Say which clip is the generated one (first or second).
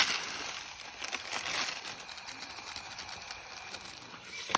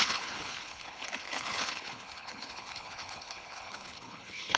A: second